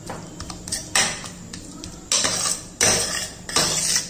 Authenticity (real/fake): real